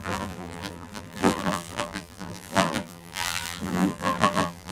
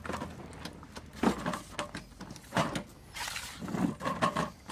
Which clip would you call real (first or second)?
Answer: second